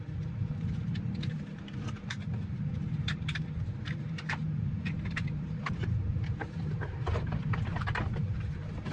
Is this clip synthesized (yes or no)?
yes